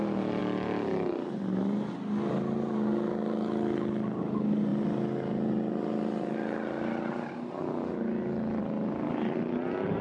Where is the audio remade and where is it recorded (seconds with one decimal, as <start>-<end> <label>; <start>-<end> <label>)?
0.0-10.0 recorded